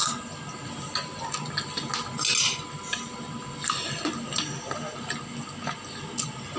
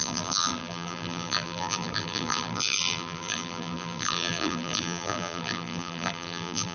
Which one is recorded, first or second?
first